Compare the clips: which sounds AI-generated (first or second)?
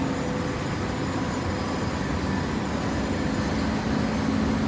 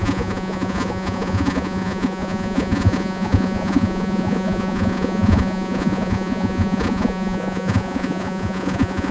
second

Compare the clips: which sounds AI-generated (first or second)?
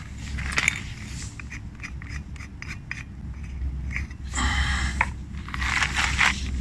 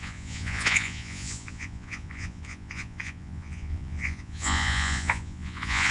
second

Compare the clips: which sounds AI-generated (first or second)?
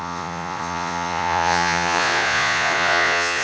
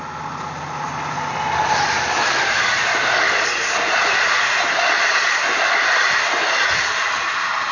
first